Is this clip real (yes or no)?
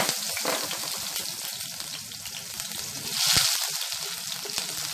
yes